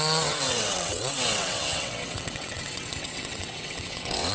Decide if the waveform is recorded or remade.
remade